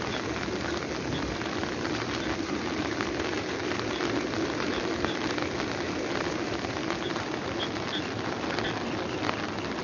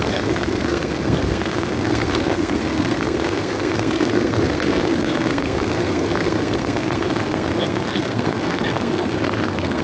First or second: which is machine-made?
second